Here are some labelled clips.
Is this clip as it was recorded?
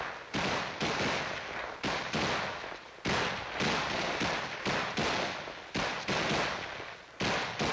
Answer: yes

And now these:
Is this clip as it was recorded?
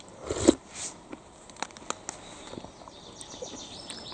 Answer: yes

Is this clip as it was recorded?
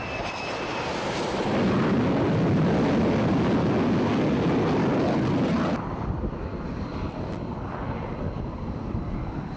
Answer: yes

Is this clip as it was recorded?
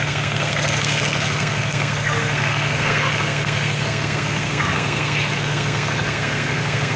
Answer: no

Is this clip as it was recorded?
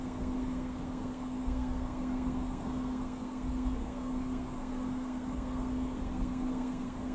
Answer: no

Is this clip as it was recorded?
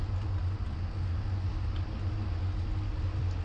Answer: yes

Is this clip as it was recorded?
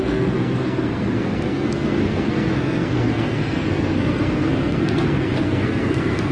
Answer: no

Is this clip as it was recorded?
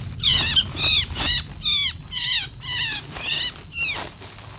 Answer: yes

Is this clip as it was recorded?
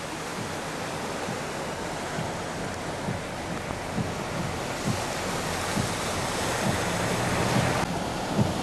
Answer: yes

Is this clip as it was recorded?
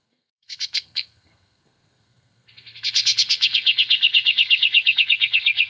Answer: no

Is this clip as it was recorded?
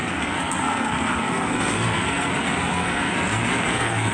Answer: no